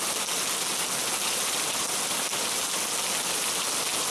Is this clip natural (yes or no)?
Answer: yes